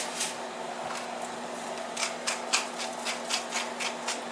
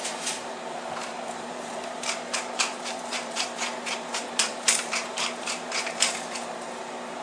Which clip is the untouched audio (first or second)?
first